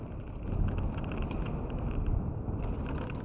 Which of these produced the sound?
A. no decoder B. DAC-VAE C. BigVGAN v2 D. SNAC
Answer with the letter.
A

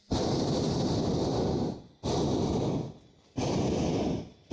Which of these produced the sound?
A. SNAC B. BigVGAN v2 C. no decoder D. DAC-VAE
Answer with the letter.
C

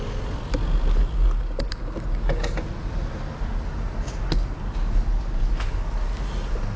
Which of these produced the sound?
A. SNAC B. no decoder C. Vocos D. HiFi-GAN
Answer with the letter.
B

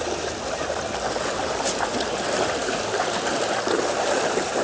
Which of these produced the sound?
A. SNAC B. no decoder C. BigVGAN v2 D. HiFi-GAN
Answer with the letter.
B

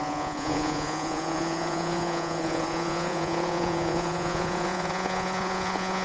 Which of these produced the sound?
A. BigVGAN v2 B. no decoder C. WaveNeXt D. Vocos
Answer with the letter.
D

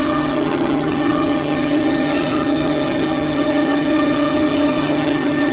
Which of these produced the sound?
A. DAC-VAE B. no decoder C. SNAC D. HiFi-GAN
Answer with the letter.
D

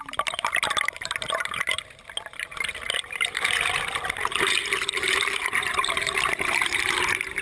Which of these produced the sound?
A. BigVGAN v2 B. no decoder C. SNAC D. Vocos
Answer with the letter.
A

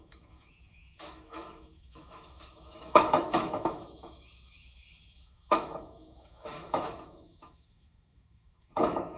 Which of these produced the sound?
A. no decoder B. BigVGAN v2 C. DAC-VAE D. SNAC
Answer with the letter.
C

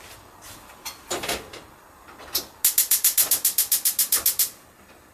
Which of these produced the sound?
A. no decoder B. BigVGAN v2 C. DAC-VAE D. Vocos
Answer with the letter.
A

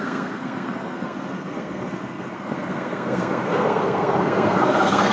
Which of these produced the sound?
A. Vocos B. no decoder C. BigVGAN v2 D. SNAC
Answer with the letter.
D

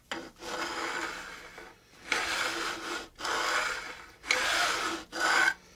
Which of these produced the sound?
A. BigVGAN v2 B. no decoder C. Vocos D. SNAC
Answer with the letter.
B